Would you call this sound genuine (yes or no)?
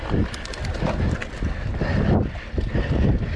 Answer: yes